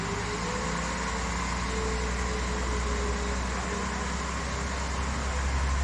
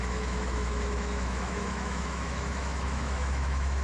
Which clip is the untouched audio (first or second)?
first